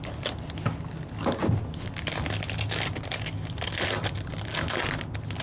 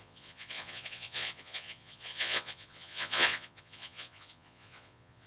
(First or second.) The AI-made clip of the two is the second